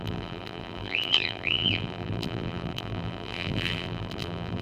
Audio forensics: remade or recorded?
remade